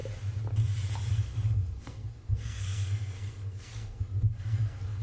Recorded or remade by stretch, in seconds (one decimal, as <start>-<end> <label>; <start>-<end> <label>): 0.0-1.1 recorded; 1.1-5.0 remade